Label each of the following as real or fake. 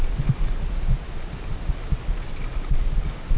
real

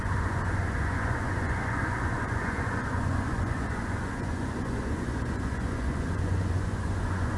fake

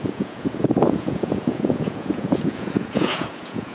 fake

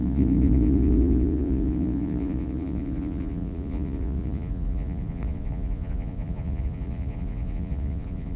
fake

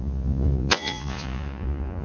fake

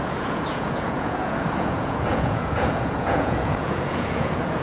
fake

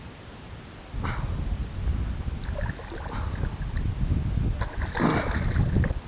real